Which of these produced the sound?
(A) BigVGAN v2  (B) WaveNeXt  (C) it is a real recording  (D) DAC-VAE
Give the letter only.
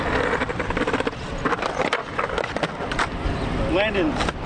C